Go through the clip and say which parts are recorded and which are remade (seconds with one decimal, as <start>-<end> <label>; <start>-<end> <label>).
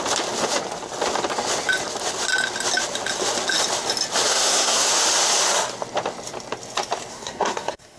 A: 0.0-4.3 recorded; 4.3-4.9 remade; 4.9-7.1 recorded; 7.1-8.0 remade